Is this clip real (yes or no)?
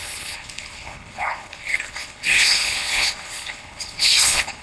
no